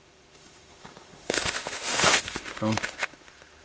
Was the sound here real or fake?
fake